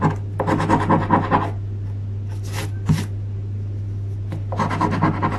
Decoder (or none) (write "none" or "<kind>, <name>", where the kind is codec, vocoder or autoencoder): none